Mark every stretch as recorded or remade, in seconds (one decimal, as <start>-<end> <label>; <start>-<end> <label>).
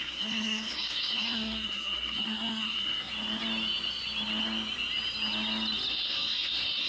0.0-3.1 remade; 3.1-5.9 recorded; 5.9-6.9 remade